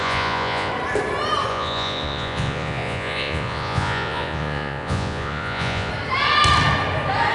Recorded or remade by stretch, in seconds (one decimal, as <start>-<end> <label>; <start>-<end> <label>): 0.0-0.7 remade; 0.7-1.5 recorded; 1.5-5.9 remade; 5.9-7.3 recorded